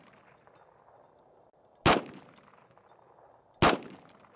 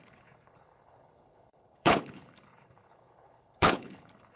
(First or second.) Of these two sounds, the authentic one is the first